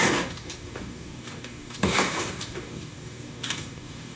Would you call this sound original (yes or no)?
no